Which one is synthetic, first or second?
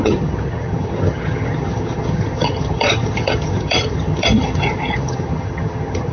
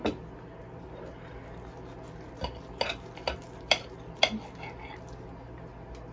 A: first